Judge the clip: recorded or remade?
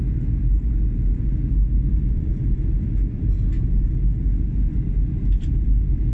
recorded